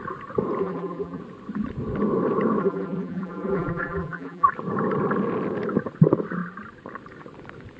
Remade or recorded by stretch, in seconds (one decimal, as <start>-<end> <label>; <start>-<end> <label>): 0.0-0.6 recorded; 0.6-1.2 remade; 1.2-2.6 recorded; 2.6-4.5 remade; 4.5-7.8 recorded

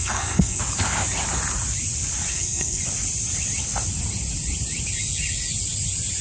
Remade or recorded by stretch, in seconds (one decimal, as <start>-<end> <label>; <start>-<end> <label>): 0.0-0.6 remade; 0.6-2.3 recorded; 2.3-2.8 remade; 2.8-6.2 recorded

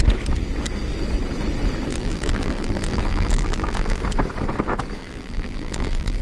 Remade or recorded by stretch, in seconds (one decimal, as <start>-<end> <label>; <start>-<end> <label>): 0.0-1.9 recorded; 1.9-4.0 remade; 4.0-5.0 recorded; 5.0-6.2 remade

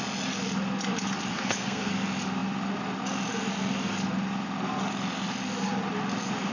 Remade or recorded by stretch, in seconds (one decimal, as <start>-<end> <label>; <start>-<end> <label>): 0.0-1.3 recorded; 1.3-1.9 remade; 1.9-6.5 recorded